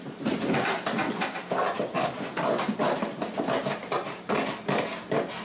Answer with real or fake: real